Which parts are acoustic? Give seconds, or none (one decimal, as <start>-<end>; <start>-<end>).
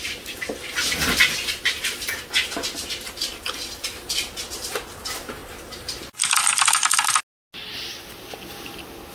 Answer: 0.0-9.1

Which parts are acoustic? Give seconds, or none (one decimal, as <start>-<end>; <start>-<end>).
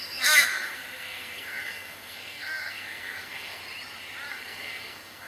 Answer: 3.6-4.3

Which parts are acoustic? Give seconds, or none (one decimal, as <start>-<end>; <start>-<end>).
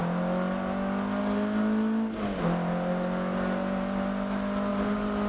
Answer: 0.0-4.7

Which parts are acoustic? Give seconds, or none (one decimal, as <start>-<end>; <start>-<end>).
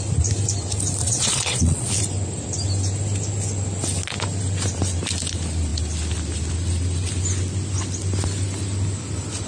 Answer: 0.0-1.0; 2.0-9.5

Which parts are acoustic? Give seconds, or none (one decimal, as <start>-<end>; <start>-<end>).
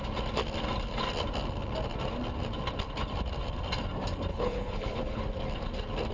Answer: 0.0-4.3; 5.2-6.1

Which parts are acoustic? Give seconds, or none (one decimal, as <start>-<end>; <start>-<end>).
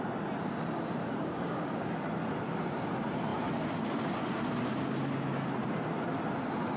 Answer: 0.0-1.0; 1.9-6.8